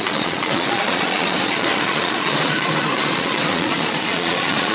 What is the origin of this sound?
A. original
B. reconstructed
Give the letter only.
B